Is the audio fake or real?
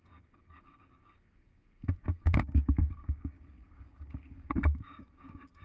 fake